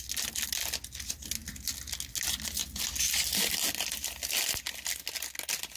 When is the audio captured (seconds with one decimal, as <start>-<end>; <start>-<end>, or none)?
0.0-5.8